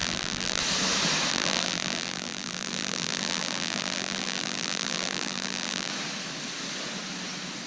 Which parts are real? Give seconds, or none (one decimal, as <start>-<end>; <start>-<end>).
0.6-1.3; 5.9-7.7